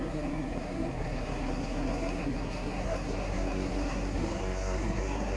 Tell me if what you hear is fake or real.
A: fake